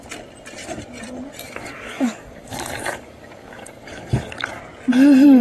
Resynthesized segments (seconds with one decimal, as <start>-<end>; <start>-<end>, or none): 1.4-4.6